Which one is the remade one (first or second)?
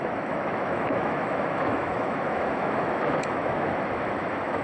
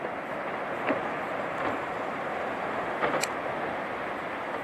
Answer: first